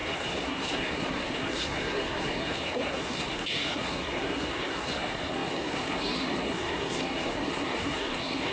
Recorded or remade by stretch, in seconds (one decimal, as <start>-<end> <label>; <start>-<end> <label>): 0.0-8.5 remade